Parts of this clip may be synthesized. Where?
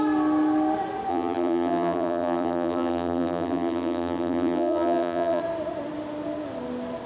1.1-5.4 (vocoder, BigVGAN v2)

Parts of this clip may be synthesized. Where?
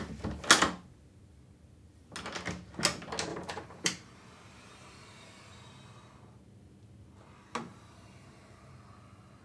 3.3-5.5 (vocoder, BigVGAN v2); 7.7-8.7